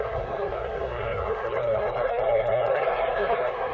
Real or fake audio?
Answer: fake